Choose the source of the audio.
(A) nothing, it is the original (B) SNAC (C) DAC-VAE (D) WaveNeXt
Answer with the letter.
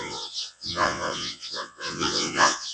D